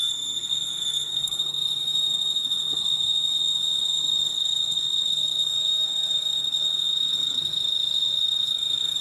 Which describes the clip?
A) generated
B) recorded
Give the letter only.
A